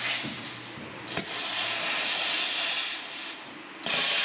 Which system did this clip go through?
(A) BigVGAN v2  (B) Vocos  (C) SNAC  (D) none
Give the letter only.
D